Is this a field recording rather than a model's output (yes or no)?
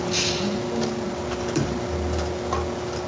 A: yes